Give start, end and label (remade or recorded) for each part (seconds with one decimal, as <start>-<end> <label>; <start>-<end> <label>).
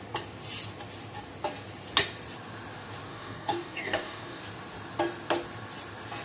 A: 0.0-3.1 recorded; 3.1-4.4 remade; 4.4-6.2 recorded